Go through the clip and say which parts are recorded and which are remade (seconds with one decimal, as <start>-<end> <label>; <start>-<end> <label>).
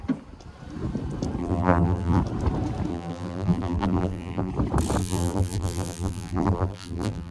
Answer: 0.0-1.4 recorded; 1.4-2.2 remade; 2.2-2.9 recorded; 2.9-4.5 remade; 4.5-5.0 recorded; 5.0-7.3 remade